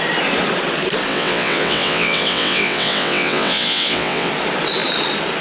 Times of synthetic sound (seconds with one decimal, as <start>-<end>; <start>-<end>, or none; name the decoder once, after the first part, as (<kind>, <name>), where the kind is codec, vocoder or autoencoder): 1.1-4.3 (vocoder, WaveNeXt)